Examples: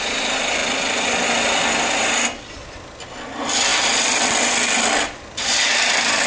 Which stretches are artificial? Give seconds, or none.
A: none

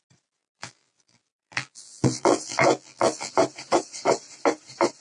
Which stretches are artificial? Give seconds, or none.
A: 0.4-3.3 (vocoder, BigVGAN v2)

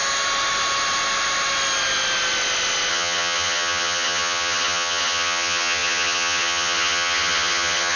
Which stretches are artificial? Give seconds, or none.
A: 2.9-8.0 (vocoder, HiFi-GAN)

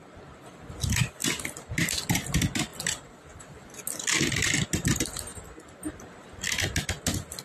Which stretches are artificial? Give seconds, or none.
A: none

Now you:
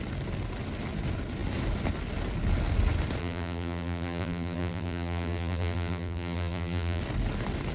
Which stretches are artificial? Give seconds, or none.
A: 3.2-7.0 (vocoder, BigVGAN v2)

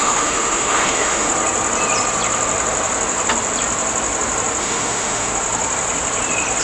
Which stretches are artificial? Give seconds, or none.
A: 0.0-1.3 (autoencoder, DAC-VAE); 4.6-5.3

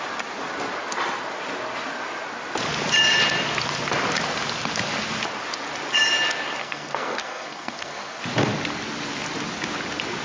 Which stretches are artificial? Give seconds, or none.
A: 6.6-8.2 (codec, SNAC)